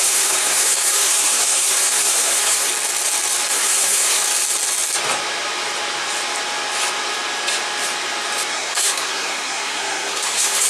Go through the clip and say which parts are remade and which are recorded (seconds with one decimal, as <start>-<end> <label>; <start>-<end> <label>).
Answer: 0.0-2.7 remade; 2.7-3.5 recorded; 3.5-4.2 remade; 4.2-8.5 recorded; 8.5-10.7 remade